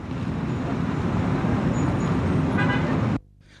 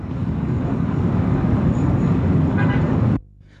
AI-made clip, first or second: second